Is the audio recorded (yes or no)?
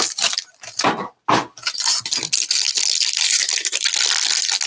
yes